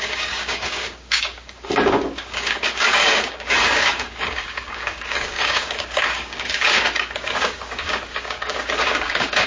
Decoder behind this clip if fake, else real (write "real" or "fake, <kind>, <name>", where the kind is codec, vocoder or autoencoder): fake, codec, DAC